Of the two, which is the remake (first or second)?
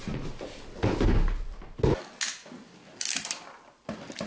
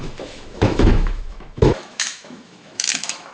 second